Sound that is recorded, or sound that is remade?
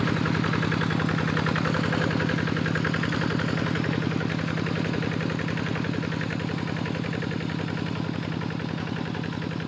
recorded